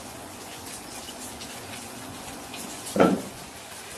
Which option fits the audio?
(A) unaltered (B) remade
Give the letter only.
B